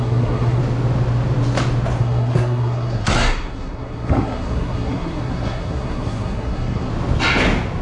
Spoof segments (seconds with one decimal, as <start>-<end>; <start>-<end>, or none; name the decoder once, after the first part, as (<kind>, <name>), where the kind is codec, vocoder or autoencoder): 0.0-0.6 (codec, SNAC); 2.0-6.9